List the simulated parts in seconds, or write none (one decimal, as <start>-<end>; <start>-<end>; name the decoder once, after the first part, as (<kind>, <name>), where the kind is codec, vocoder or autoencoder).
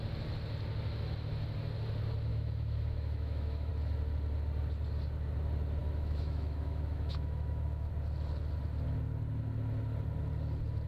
2.3-3.7 (autoencoder, DAC-VAE); 5.8-7.9